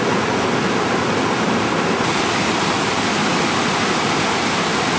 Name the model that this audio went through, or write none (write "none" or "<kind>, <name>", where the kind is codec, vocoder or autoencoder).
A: none